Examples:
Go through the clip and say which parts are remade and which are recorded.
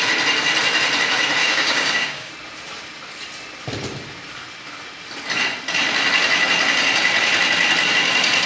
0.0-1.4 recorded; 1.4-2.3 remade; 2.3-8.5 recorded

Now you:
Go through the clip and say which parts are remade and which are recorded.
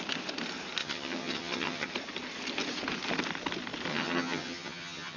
0.0-0.8 recorded; 0.8-1.9 remade; 1.9-3.9 recorded; 3.9-5.2 remade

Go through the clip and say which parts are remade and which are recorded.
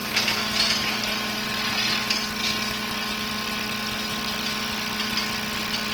0.0-5.9 recorded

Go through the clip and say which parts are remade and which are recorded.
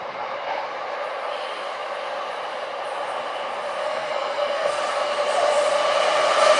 0.0-3.8 recorded; 3.8-4.8 remade; 4.8-6.6 recorded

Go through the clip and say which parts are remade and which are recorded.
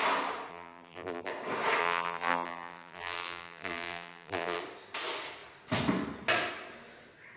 0.0-0.5 recorded; 0.5-1.3 remade; 1.3-1.8 recorded; 1.8-4.6 remade; 4.6-7.4 recorded